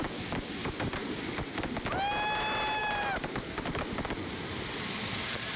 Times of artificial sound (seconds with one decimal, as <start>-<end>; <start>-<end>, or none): 0.6-1.3; 2.8-3.8